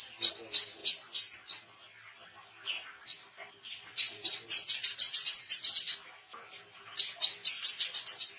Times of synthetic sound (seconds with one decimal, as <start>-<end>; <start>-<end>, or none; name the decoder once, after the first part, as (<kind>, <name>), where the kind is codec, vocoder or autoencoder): none